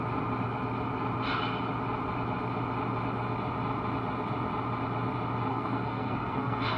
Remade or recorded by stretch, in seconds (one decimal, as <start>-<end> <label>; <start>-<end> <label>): 0.0-5.5 recorded; 5.5-6.8 remade

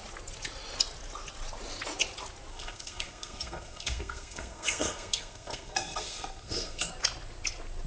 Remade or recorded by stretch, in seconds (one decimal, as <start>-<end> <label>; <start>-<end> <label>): 0.0-2.5 recorded; 2.5-6.9 remade; 6.9-7.9 recorded

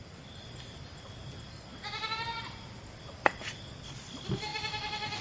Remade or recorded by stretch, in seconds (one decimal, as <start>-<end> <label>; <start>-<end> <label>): 0.0-1.7 remade; 1.7-2.4 recorded; 2.4-5.2 remade